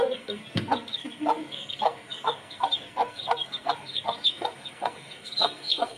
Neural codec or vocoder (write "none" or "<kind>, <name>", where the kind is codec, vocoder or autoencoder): codec, SNAC